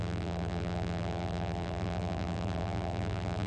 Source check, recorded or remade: remade